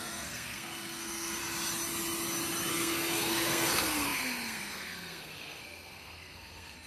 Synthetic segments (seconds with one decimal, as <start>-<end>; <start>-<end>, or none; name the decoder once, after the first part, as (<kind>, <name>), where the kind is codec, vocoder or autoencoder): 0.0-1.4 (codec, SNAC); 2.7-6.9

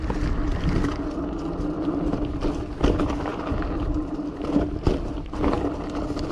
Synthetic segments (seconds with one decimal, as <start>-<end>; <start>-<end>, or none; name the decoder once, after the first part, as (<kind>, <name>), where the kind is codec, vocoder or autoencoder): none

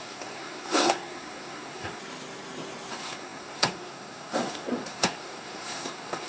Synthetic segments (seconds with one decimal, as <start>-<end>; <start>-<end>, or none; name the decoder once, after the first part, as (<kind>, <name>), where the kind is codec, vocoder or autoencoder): 0.0-2.0 (codec, SNAC); 2.9-6.3

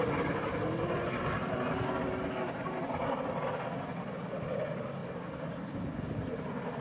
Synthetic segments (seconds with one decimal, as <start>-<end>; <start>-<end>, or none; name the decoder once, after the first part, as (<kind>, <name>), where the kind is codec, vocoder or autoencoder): none

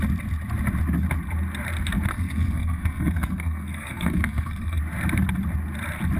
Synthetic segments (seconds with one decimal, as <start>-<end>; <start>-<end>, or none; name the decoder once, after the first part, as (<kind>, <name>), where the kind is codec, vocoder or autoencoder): 2.1-4.8 (codec, SNAC)

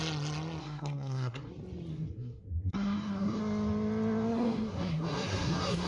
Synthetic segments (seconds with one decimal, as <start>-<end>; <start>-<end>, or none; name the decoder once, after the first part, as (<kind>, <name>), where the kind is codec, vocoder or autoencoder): 0.6-1.5 (codec, SNAC); 1.9-3.4; 4.3-5.9